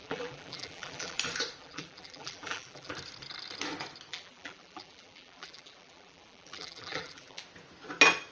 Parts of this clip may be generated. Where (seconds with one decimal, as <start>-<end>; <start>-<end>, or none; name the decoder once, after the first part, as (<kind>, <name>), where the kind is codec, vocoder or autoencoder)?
0.0-1.2 (vocoder, BigVGAN v2); 1.6-2.9; 4.1-7.4